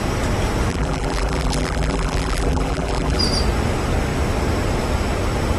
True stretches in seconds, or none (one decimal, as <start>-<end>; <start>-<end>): 0.0-0.7; 3.2-5.6